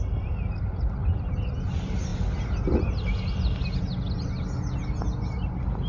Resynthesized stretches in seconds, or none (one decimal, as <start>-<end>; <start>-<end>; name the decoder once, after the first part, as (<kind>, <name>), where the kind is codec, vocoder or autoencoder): none